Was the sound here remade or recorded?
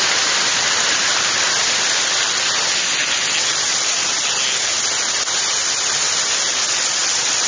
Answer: recorded